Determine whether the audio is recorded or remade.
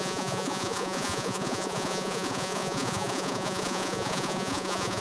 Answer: remade